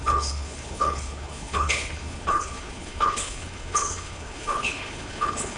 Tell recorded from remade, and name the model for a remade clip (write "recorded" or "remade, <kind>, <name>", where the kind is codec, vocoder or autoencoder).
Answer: remade, codec, HILCodec